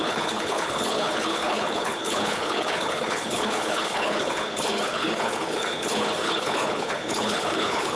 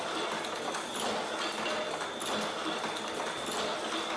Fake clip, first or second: first